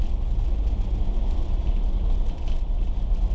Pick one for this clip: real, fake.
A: real